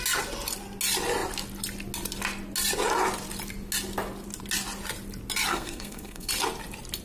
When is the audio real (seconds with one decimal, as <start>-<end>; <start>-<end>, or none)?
0.0-5.5; 6.3-7.0